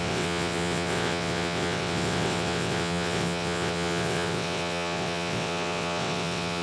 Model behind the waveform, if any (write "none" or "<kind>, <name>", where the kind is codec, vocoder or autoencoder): vocoder, WaveNeXt